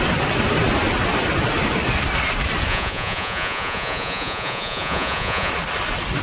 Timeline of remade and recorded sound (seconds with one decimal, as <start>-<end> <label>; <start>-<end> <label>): 0.0-2.7 recorded; 2.7-5.5 remade; 5.5-6.2 recorded